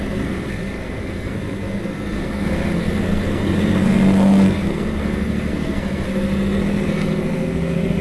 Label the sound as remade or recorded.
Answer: remade